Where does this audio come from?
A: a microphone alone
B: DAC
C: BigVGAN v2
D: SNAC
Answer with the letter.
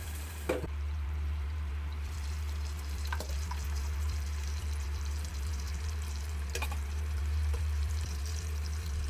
C